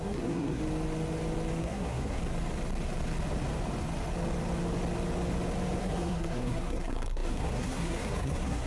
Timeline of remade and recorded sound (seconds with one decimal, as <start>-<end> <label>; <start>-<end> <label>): 0.0-0.6 remade; 0.6-1.6 recorded; 1.6-2.2 remade; 2.2-5.8 recorded; 5.8-8.7 remade

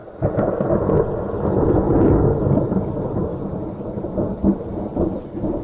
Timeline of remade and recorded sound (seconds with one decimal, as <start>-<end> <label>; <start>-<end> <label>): 0.0-5.6 recorded